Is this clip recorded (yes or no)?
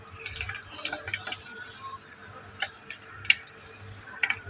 yes